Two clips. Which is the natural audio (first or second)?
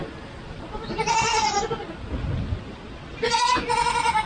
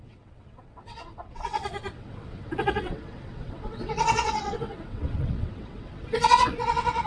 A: first